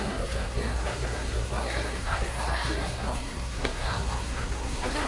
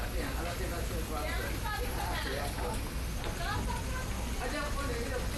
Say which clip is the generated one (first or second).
first